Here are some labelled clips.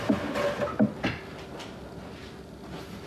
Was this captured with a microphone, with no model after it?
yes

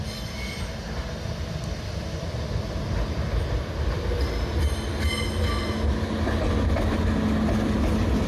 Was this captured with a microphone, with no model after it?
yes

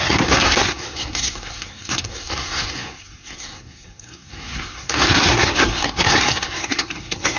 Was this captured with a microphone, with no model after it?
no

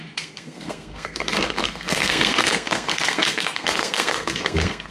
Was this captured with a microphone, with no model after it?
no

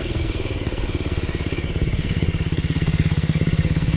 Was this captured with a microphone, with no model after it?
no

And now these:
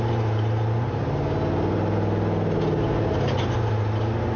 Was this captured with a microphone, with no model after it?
yes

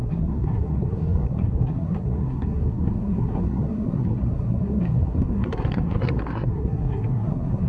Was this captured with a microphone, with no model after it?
no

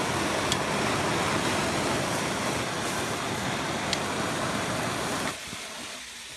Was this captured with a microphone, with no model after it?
yes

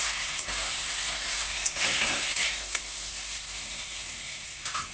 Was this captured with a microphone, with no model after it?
no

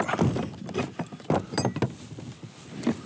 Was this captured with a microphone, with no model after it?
yes